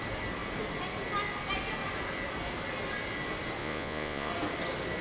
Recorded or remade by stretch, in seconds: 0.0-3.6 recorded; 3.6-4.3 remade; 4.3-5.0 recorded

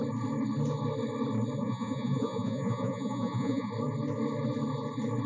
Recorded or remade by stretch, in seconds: 0.0-1.6 recorded; 1.6-3.7 remade; 3.7-5.3 recorded

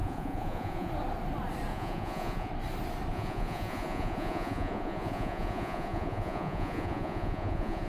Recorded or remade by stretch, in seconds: 0.0-0.9 remade; 0.9-1.7 recorded; 1.7-2.5 remade; 2.5-3.1 recorded; 3.1-7.9 remade

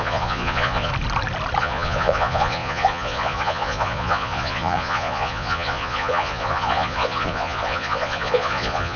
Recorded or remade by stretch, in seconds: 0.0-0.9 remade; 0.9-1.6 recorded; 1.6-9.0 remade

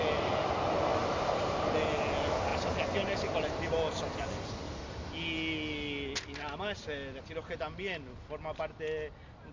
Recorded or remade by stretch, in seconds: 0.0-9.5 recorded